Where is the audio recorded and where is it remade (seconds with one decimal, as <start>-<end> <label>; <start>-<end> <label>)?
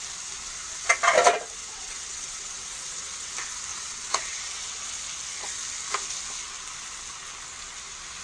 0.0-1.6 recorded; 1.6-3.3 remade; 3.3-3.7 recorded; 3.7-5.0 remade; 5.0-8.2 recorded